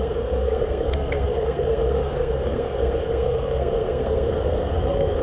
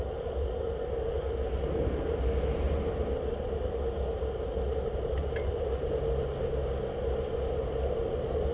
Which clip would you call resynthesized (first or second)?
first